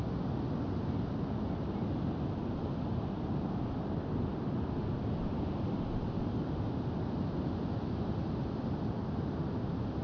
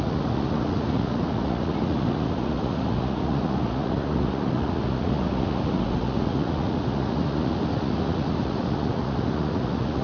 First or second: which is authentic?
first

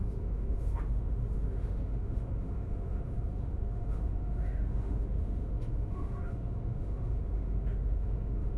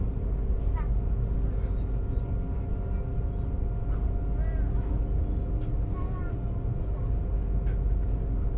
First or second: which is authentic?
second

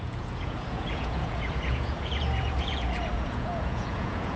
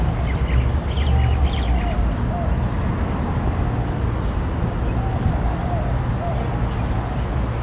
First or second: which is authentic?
second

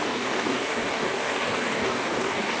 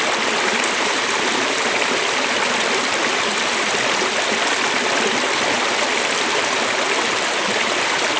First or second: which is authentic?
second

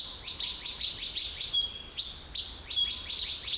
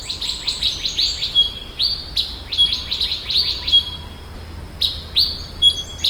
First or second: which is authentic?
second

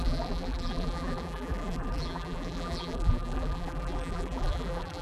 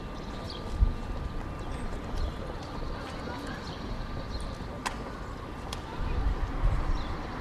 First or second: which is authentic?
second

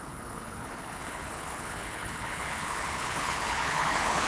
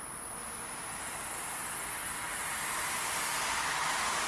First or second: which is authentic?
second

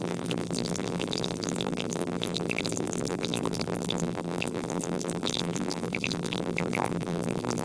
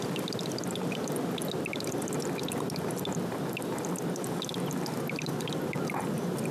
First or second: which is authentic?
second